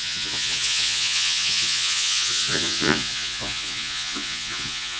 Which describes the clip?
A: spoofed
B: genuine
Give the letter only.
A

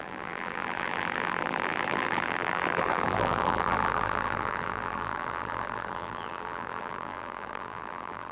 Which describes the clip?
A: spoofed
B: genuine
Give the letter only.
A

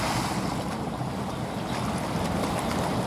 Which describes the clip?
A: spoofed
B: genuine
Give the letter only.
B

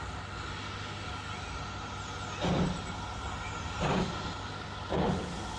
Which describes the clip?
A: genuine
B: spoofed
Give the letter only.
A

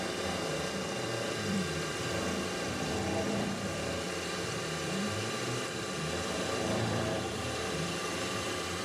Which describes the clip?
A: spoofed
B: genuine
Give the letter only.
A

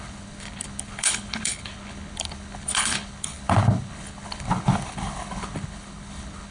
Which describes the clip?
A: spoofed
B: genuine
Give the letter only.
A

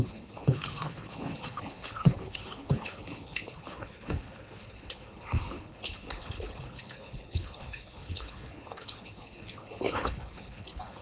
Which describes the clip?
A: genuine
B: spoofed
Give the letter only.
B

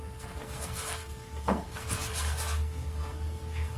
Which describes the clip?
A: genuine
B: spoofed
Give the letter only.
B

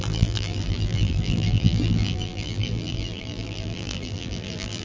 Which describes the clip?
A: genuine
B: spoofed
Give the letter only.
B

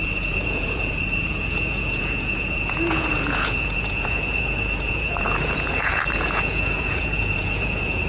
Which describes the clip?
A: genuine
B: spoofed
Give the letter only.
B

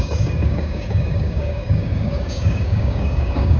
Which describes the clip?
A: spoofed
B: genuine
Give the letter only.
A